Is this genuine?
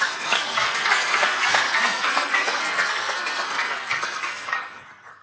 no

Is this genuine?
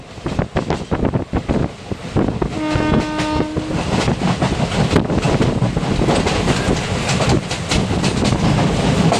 yes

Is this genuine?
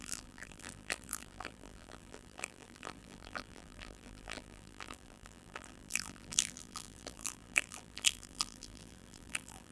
no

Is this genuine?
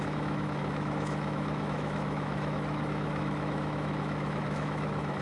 no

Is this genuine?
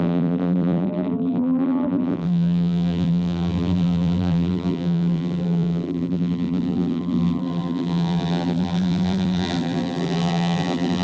no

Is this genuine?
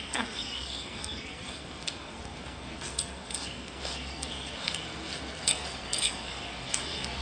no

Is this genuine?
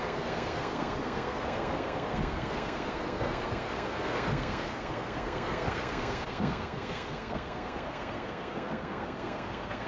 no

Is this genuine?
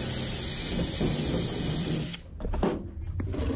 yes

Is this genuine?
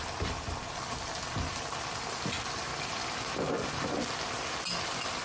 yes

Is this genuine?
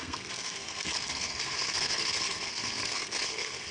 no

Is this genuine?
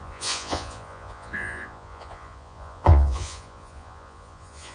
no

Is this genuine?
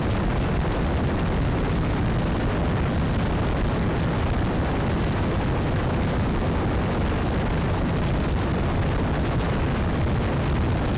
yes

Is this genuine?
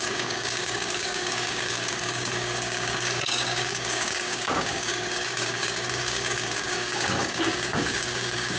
no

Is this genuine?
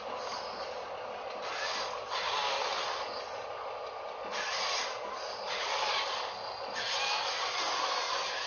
yes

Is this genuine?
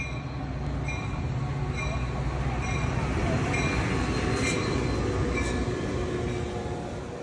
yes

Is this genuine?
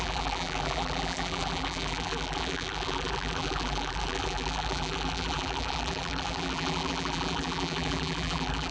no